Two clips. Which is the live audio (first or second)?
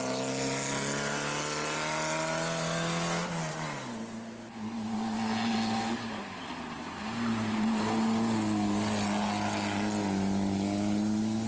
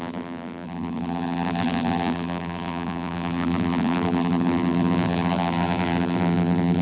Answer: first